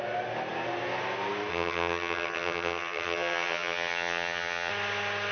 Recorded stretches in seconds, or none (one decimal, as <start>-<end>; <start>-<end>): 0.0-1.5; 4.7-5.3